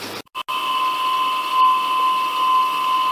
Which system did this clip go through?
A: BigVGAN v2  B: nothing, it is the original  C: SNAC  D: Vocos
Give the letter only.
B